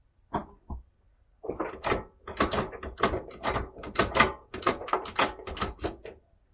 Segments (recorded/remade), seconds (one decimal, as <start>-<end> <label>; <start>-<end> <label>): 0.0-6.5 recorded